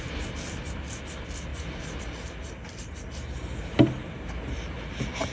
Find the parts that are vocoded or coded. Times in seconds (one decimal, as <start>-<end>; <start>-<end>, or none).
none